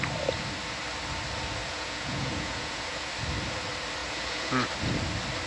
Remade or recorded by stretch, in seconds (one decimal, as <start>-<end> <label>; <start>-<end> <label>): 0.0-1.6 recorded; 1.6-3.1 remade; 3.1-4.0 recorded; 4.0-4.5 remade; 4.5-5.5 recorded